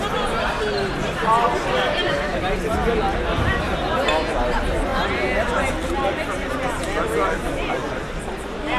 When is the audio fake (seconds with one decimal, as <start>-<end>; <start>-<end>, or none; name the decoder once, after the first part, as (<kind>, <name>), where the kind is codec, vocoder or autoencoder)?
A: none